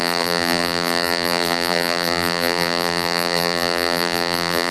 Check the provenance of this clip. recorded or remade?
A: remade